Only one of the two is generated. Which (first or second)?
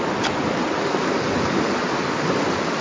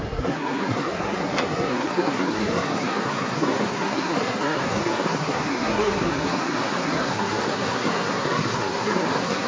second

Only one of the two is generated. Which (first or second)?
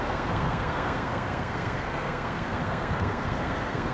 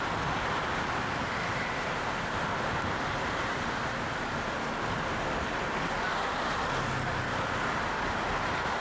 first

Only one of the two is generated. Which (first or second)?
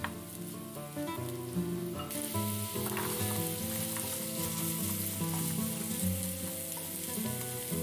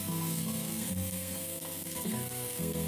second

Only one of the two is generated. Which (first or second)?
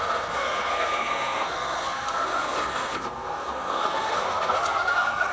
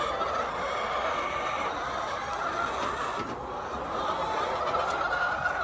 first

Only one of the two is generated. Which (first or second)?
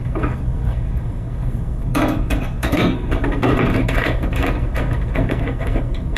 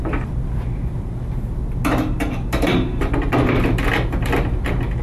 first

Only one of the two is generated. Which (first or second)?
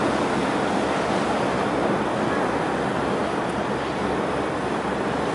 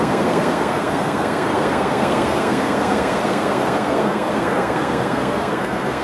second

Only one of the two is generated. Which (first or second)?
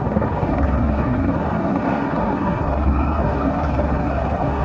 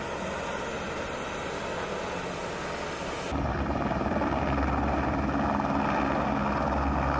first